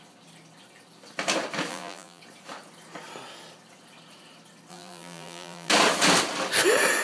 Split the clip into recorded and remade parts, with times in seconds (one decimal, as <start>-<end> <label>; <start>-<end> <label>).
0.0-1.7 recorded; 1.7-2.2 remade; 2.2-4.7 recorded; 4.7-5.7 remade; 5.7-7.0 recorded